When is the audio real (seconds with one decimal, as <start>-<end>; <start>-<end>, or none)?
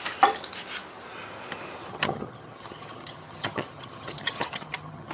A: 0.0-1.9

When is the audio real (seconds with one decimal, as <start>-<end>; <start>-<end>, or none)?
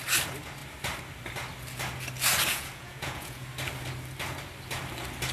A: 0.0-2.5; 3.5-5.3